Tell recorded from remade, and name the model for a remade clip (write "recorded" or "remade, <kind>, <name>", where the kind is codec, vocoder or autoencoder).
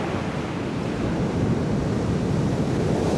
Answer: recorded